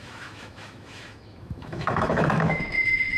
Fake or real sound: fake